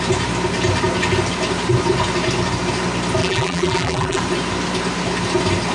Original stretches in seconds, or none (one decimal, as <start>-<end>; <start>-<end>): 0.0-3.2; 4.2-5.7